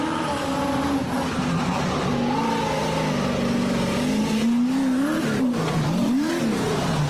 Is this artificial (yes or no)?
no